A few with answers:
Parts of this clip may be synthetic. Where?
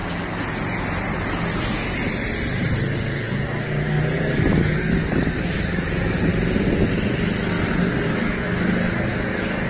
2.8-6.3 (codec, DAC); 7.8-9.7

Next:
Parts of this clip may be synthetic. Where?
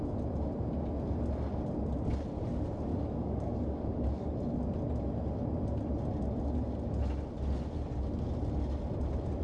2.9-4.3 (codec, DAC)